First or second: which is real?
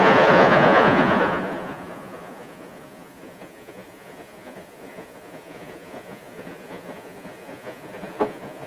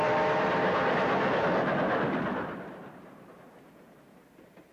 second